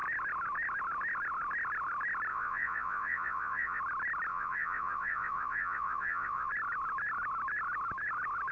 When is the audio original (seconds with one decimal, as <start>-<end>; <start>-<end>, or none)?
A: 0.0-2.3; 3.8-4.3; 6.5-8.5